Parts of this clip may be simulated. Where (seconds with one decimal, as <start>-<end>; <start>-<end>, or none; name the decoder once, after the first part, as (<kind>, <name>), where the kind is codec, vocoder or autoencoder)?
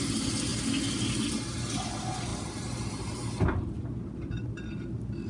none